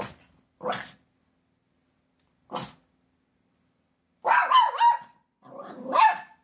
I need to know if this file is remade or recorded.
recorded